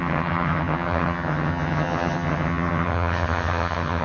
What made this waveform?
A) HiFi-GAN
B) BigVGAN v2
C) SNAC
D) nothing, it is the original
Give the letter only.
A